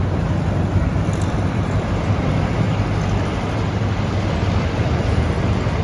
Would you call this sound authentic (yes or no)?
no